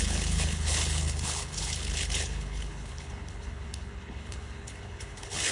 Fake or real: fake